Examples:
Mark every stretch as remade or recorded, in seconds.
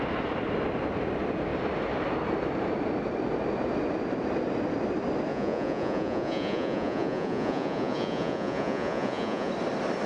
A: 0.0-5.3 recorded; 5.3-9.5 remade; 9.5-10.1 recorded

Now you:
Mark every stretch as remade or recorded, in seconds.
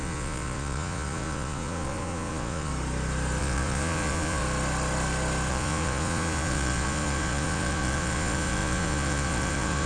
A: 0.0-2.7 remade; 2.7-3.4 recorded; 3.4-4.4 remade; 4.4-5.5 recorded; 5.5-9.9 remade